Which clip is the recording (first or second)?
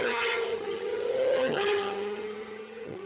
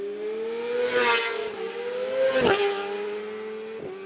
second